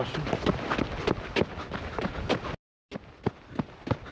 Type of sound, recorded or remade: recorded